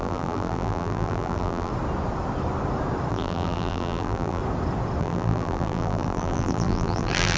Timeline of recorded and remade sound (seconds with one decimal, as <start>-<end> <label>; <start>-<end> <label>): 0.0-1.7 remade; 1.7-3.1 recorded; 3.1-4.4 remade; 4.4-5.0 recorded; 5.0-7.4 remade